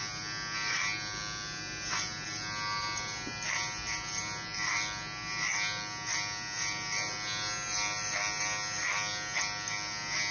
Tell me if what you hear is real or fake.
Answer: real